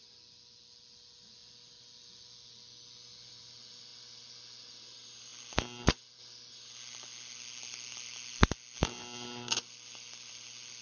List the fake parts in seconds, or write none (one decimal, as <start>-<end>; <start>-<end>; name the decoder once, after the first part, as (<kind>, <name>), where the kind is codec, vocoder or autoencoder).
none